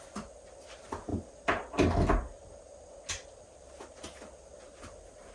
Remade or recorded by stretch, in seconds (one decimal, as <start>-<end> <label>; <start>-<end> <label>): 0.0-5.3 recorded